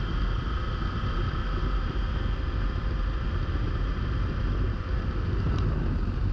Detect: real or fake real